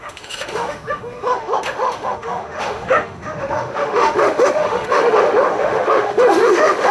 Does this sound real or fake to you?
fake